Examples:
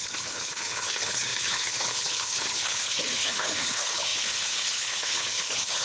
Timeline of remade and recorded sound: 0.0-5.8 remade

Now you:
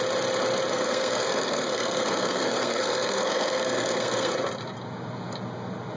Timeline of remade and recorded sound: 0.0-0.7 recorded; 0.7-4.3 remade; 4.3-6.0 recorded

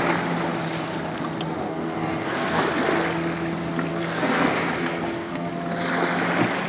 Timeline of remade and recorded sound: 0.0-1.6 recorded; 1.6-2.6 remade; 2.6-3.9 recorded; 3.9-5.5 remade; 5.5-6.7 recorded

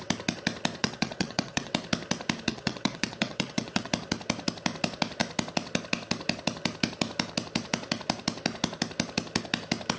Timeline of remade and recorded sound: 0.0-0.8 recorded; 0.8-1.7 remade; 1.7-2.5 recorded; 2.5-3.9 remade; 3.9-10.0 recorded